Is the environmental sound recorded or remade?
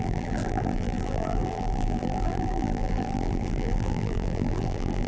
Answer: remade